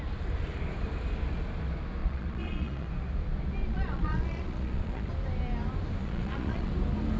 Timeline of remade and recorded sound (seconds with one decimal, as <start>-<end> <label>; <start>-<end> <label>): 0.0-2.0 recorded; 2.0-2.9 remade; 2.9-3.6 recorded; 3.6-5.1 remade; 5.1-6.0 recorded; 6.0-6.7 remade; 6.7-7.2 recorded